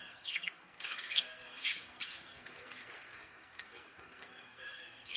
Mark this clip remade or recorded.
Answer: remade